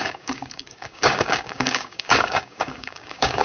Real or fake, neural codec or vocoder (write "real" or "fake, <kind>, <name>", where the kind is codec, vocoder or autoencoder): fake, codec, DAC